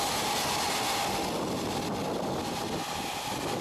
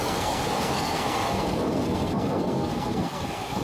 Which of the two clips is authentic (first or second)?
first